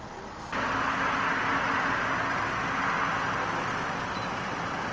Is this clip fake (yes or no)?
no